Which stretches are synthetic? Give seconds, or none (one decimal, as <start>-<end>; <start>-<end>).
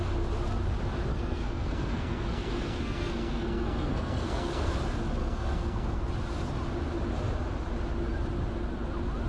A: 1.1-4.7; 5.2-6.1